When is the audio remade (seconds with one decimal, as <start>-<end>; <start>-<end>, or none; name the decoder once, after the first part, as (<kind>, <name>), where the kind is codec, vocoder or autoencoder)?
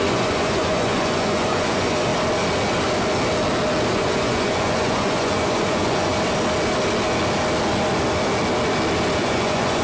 0.0-2.1 (vocoder, Vocos); 3.9-6.1; 9.2-9.8